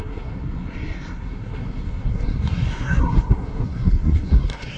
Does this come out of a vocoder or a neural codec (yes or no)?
yes